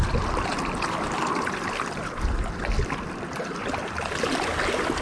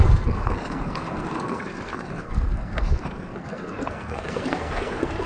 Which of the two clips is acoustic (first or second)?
first